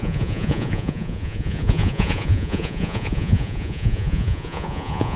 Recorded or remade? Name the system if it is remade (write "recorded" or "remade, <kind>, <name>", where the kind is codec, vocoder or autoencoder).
remade, vocoder, Vocos